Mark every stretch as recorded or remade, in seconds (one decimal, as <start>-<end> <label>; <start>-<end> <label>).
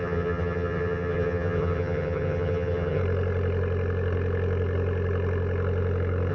0.0-3.0 remade; 3.0-6.3 recorded